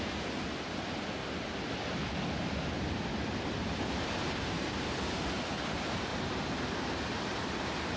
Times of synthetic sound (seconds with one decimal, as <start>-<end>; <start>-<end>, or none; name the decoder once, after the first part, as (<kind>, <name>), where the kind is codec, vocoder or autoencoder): 0.0-1.2 (vocoder, BigVGAN v2); 2.6-8.0